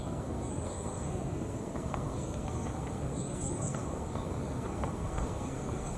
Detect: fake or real fake